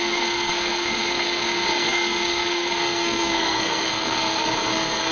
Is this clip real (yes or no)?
no